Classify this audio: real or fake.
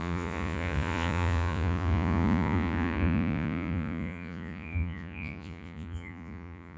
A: fake